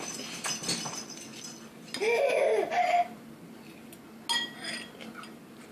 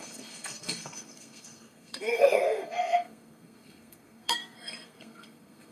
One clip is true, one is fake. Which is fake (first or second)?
second